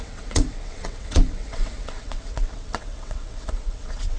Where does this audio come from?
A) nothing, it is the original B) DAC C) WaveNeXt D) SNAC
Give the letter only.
C